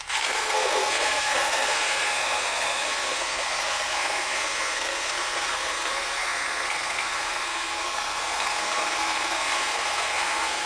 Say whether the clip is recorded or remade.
remade